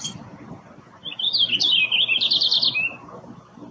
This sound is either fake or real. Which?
real